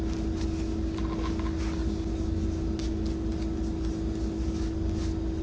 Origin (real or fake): real